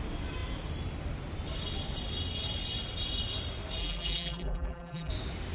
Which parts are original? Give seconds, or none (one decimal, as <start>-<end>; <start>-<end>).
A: 0.0-3.8; 5.1-5.5